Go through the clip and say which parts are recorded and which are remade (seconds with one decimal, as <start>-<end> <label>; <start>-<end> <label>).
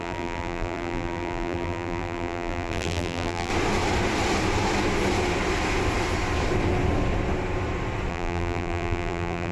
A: 0.0-3.5 remade; 3.5-8.1 recorded; 8.1-9.5 remade